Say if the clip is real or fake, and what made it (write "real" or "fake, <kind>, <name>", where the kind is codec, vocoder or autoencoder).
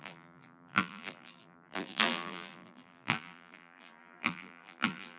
fake, vocoder, BigVGAN v2